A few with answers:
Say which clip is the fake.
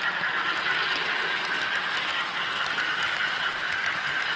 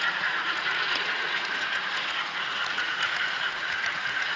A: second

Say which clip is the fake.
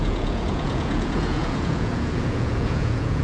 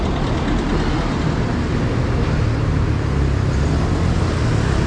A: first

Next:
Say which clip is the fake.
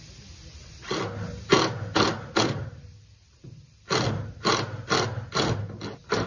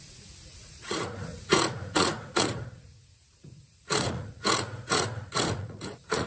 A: second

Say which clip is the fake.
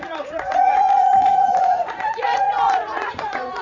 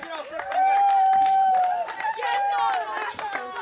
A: first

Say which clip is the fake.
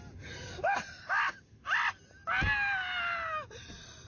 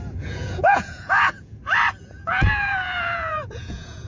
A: second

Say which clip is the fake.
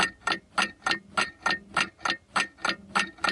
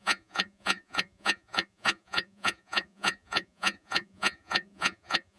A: second